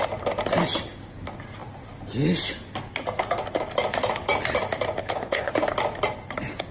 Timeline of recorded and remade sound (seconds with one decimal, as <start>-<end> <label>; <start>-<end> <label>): 0.0-5.0 recorded; 5.0-5.5 remade; 5.5-6.7 recorded